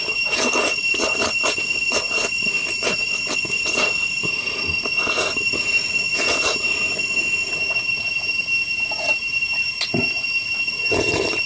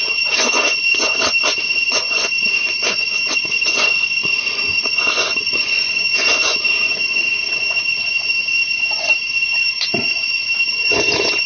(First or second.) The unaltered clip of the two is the first